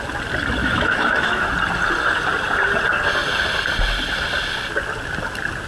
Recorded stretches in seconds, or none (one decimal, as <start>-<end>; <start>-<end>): 0.0-0.6; 1.5-5.7